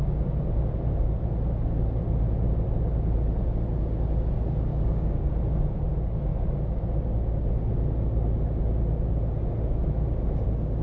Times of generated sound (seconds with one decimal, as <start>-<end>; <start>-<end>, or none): 4.7-5.3